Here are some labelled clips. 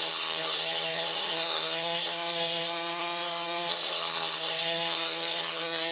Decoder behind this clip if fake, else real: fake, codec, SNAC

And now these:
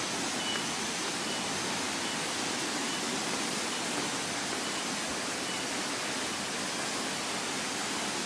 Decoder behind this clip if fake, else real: real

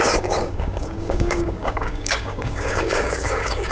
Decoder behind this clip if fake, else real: fake, codec, DAC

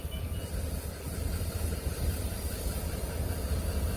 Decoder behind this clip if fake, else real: real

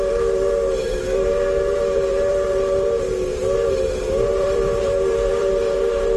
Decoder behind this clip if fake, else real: fake, vocoder, BigVGAN v2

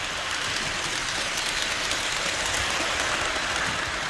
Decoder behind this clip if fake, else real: real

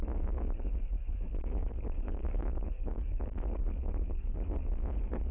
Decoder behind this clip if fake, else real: fake, codec, DAC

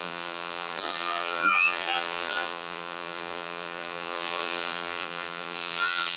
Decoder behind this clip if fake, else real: fake, vocoder, BigVGAN v2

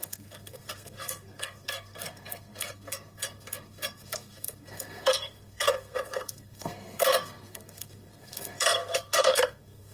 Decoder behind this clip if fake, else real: fake, codec, SNAC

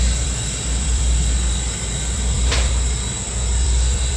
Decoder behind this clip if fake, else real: fake, vocoder, BigVGAN v2